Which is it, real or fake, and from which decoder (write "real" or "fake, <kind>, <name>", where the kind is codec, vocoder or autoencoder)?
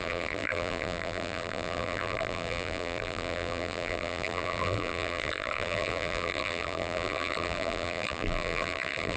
fake, vocoder, BigVGAN v2